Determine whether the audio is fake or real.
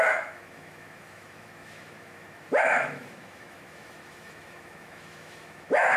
fake